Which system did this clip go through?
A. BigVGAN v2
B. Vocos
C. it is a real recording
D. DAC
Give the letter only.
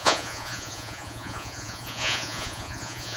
B